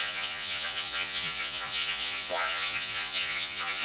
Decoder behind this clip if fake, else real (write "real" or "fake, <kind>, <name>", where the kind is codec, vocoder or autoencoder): fake, vocoder, Vocos